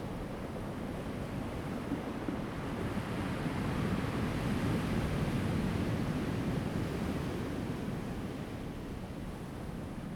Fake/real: real